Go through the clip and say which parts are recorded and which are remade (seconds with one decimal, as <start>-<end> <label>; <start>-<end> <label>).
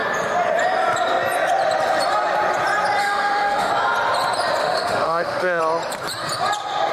0.0-3.0 recorded; 3.0-3.7 remade; 3.7-4.6 recorded; 4.6-5.6 remade; 5.6-6.9 recorded